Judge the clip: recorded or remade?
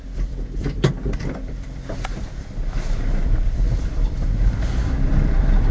remade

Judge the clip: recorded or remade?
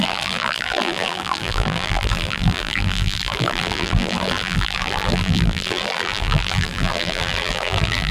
remade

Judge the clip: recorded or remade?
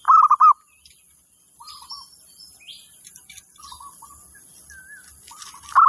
recorded